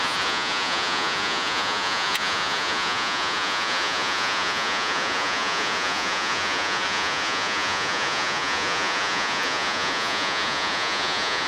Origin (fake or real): fake